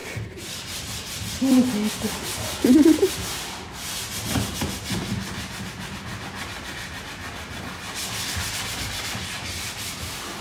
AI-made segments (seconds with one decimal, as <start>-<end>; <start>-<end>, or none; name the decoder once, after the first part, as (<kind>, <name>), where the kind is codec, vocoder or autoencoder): none